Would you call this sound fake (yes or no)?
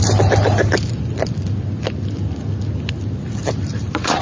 no